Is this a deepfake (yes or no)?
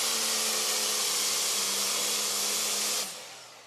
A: no